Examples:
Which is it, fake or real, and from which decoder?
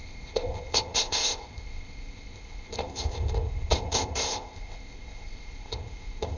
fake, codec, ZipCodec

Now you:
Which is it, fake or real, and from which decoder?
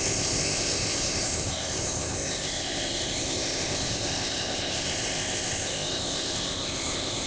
fake, codec, ZipCodec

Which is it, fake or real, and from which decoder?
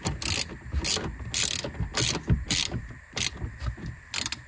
real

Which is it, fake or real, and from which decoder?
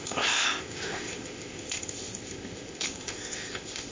fake, codec, ZipCodec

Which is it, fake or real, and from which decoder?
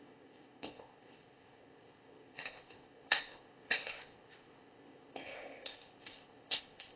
fake, codec, ZipCodec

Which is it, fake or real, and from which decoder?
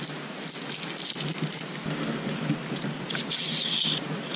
real